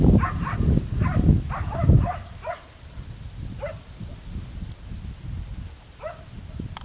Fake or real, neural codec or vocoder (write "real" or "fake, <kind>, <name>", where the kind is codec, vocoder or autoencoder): real